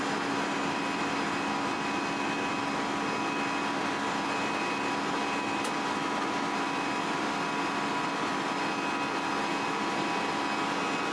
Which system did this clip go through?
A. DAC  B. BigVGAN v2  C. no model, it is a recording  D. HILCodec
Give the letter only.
C